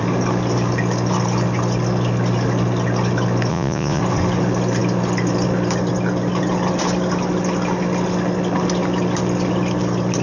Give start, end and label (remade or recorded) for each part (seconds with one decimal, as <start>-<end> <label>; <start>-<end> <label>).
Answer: 0.0-3.5 recorded; 3.5-4.0 remade; 4.0-10.2 recorded